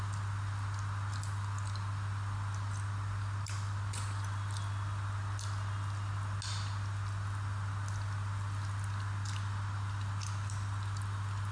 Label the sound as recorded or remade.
recorded